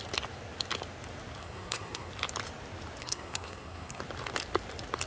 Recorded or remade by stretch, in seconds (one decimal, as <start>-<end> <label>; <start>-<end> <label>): 0.0-1.4 recorded; 1.4-2.1 remade; 2.1-3.0 recorded; 3.0-4.0 remade; 4.0-5.1 recorded